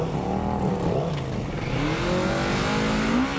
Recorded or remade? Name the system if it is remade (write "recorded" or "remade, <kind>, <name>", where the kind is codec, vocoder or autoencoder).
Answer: recorded